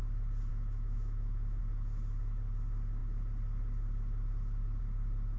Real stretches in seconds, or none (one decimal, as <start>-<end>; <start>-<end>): 0.0-0.5; 1.6-5.4